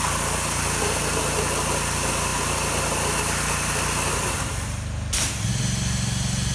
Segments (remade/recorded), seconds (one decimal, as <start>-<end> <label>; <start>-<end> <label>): 0.0-6.5 recorded